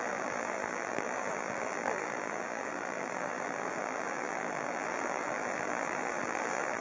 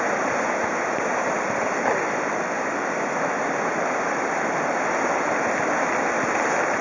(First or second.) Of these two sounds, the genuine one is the second